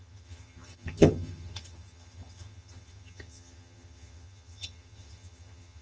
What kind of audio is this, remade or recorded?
remade